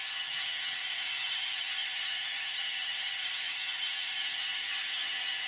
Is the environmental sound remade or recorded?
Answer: remade